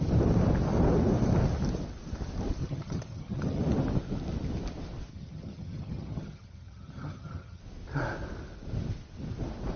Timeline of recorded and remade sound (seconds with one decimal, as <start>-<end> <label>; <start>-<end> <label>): 0.0-2.6 recorded; 2.6-3.6 remade; 3.6-5.1 recorded; 5.1-7.6 remade; 7.6-9.8 recorded